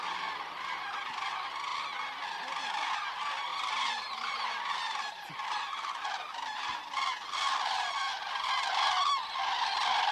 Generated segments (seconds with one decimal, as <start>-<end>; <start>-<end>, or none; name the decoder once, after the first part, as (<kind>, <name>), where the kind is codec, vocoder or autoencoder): none